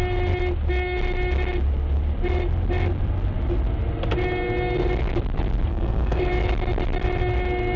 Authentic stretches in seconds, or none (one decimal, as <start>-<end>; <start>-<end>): 0.0-5.7; 6.3-7.8